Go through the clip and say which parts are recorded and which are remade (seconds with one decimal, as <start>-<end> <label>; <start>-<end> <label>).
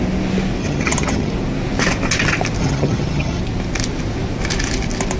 0.0-0.6 recorded; 0.6-1.3 remade; 1.3-2.6 recorded; 2.6-3.4 remade; 3.4-5.2 recorded